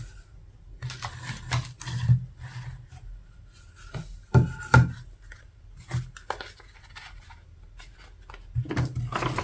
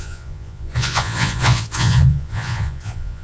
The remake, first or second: second